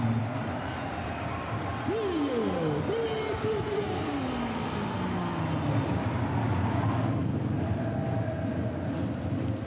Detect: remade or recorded recorded